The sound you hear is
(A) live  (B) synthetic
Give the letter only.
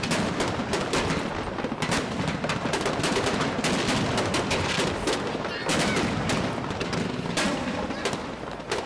A